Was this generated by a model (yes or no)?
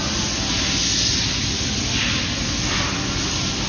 no